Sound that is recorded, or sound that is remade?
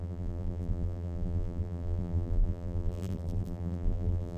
remade